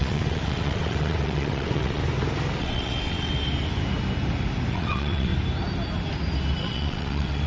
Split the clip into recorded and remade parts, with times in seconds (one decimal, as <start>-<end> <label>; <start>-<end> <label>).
0.0-2.0 remade; 2.0-2.6 recorded; 2.6-3.4 remade; 3.4-4.7 recorded; 4.7-5.3 remade; 5.3-6.6 recorded; 6.6-7.5 remade